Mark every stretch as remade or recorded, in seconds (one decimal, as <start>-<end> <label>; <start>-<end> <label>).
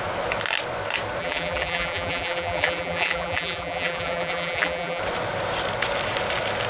0.0-1.2 recorded; 1.2-5.0 remade; 5.0-6.7 recorded